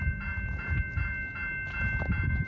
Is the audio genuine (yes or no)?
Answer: yes